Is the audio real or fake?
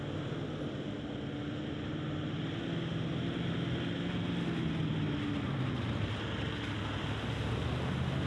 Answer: real